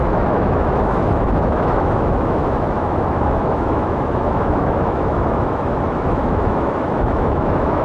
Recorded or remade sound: remade